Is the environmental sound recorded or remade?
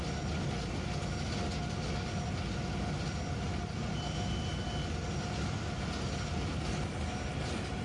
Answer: recorded